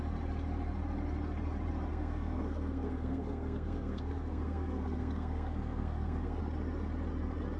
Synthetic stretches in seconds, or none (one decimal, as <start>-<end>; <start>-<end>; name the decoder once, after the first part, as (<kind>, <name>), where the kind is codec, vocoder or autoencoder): 1.9-6.4 (codec, SNAC)